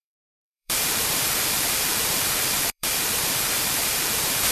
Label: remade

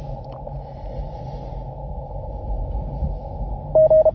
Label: recorded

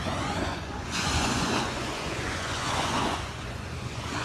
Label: remade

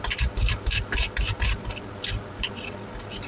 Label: recorded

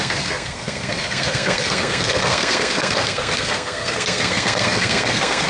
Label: remade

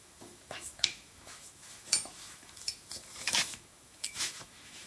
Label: remade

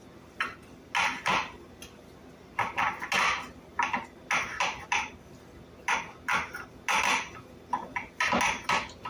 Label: recorded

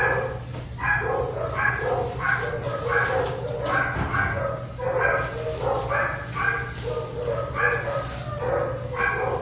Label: recorded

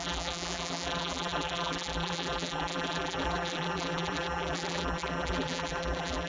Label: remade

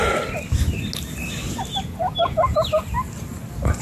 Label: recorded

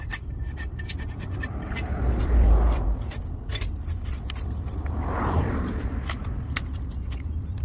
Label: remade